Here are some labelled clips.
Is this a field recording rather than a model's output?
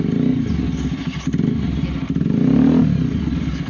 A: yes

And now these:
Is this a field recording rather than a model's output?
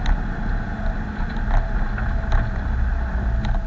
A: yes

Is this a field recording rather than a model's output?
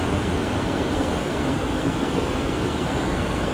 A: no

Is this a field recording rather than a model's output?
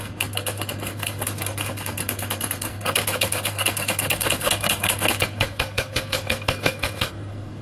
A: no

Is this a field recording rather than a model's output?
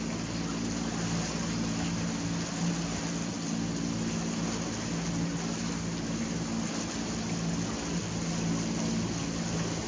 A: yes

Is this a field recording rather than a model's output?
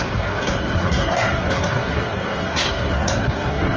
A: no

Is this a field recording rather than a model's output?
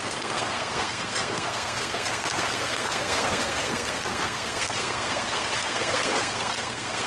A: no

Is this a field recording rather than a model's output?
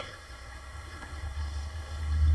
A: no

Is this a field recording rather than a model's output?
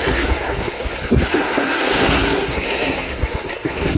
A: no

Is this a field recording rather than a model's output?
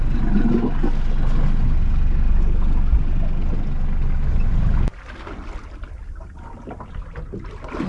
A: yes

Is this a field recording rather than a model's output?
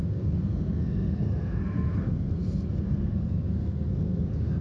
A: no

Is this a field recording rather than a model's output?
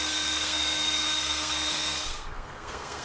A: no